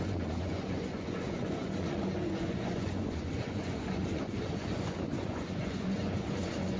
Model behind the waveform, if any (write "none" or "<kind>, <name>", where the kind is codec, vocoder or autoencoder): vocoder, Vocos